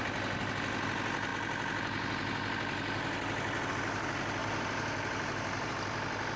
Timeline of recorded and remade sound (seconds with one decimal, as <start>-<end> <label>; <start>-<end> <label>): 0.0-4.4 recorded; 4.4-5.7 remade; 5.7-6.4 recorded